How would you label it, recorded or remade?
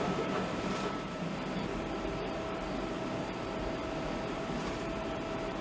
remade